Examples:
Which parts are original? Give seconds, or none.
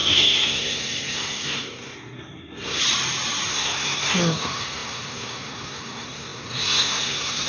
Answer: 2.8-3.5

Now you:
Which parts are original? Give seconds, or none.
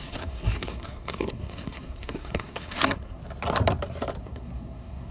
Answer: 3.2-4.2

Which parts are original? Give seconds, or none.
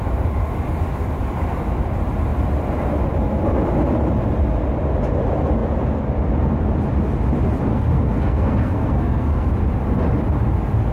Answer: 0.0-7.7; 9.5-10.9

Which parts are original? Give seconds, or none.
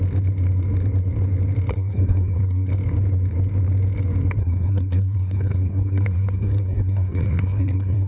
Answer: 0.0-1.7; 2.7-4.4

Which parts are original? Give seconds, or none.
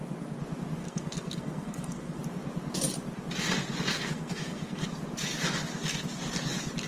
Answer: 0.0-0.8; 2.2-3.9; 4.9-6.9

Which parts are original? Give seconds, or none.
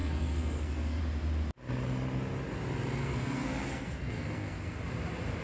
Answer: 1.0-3.0; 4.8-5.4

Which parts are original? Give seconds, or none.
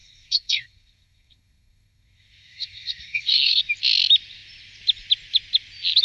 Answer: 3.6-6.0